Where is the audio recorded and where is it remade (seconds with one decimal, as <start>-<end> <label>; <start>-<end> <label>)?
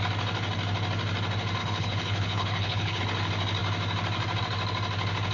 0.0-1.6 recorded; 1.6-3.0 remade; 3.0-5.3 recorded